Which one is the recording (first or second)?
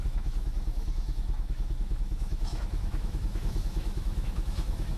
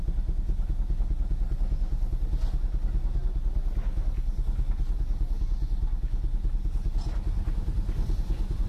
second